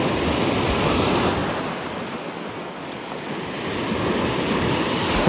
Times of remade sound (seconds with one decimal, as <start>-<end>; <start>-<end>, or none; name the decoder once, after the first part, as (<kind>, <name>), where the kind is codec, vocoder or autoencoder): none